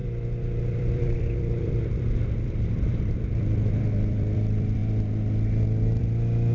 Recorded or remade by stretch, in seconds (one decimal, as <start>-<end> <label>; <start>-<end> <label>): 0.0-4.8 remade; 4.8-6.0 recorded; 6.0-6.5 remade